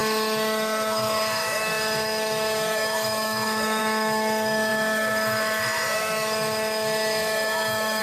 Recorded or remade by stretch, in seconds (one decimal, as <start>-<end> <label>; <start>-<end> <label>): 0.0-8.0 remade